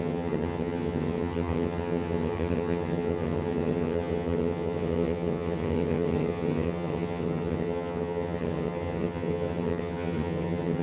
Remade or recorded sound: remade